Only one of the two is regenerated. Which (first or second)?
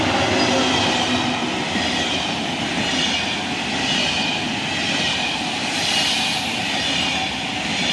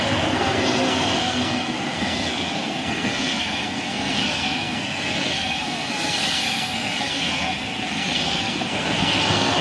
second